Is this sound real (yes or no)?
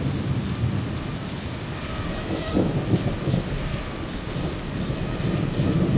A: yes